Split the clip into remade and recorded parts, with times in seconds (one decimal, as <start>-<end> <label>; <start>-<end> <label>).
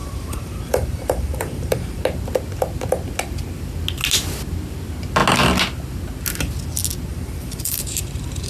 0.0-2.0 remade; 2.0-7.1 recorded; 7.1-8.5 remade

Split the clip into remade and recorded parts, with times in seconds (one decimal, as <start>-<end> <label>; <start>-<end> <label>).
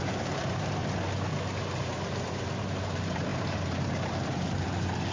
0.0-0.8 remade; 0.8-1.8 recorded; 1.8-5.1 remade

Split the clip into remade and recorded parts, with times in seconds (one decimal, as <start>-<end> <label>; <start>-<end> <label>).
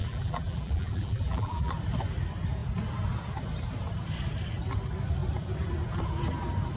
0.0-1.7 remade; 1.7-6.8 recorded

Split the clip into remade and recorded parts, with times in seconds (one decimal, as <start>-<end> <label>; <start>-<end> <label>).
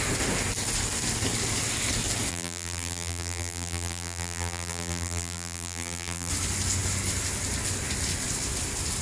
0.0-2.3 recorded; 2.3-6.3 remade; 6.3-9.0 recorded